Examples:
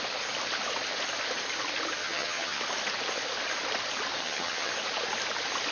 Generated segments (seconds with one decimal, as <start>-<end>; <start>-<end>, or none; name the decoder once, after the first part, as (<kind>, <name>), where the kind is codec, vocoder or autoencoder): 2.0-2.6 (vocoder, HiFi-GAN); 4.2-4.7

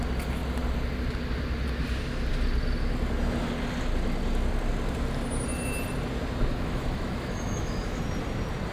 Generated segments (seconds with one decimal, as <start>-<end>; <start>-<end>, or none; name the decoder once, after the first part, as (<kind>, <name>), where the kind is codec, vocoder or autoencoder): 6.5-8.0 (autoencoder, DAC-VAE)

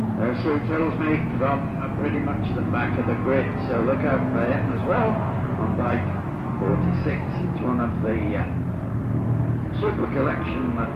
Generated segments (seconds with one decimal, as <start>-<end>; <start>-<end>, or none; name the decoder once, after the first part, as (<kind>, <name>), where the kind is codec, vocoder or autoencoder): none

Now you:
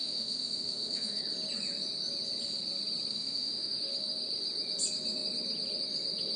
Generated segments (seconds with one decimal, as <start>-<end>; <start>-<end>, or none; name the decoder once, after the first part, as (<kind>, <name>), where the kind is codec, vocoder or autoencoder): 0.0-1.2 (autoencoder, DAC-VAE); 3.1-3.8